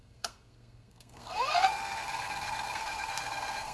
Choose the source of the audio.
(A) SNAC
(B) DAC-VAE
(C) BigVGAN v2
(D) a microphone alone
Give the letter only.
A